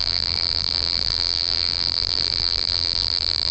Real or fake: fake